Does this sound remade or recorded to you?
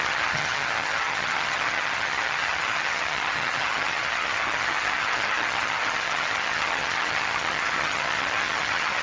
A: remade